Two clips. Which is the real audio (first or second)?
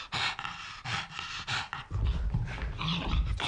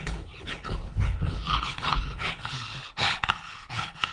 first